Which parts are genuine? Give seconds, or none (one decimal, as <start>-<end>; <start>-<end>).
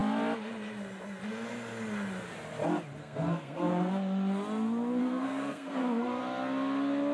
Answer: 0.0-3.0; 3.9-5.0; 6.2-7.1